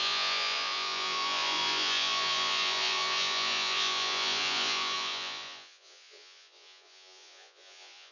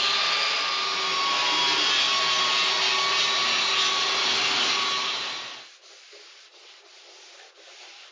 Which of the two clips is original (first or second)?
second